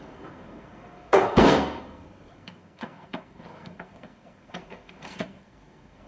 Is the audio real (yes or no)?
no